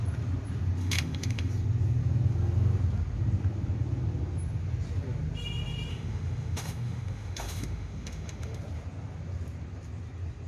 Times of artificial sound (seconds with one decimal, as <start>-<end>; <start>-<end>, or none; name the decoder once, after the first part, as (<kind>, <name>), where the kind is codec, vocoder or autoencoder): 0.8-1.5 (autoencoder, DAC-VAE); 5.9-8.6

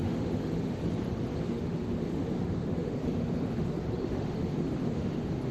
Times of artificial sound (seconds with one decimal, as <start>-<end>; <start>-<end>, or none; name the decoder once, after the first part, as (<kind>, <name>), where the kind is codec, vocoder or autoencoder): 0.0-0.8 (autoencoder, DAC-VAE); 1.4-5.5

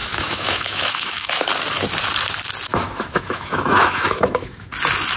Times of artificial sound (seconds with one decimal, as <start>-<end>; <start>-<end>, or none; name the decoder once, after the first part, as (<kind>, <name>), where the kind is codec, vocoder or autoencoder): 0.0-1.5 (autoencoder, DAC-VAE); 2.7-4.7